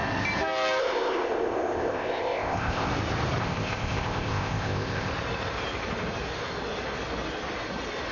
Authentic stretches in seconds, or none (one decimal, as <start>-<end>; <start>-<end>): 0.0-0.8; 2.9-3.4; 5.1-8.1